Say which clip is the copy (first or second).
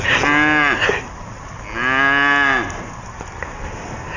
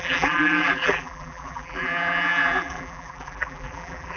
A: second